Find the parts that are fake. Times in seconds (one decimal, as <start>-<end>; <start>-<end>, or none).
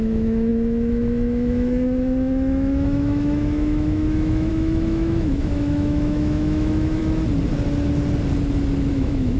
0.0-7.0; 8.9-9.4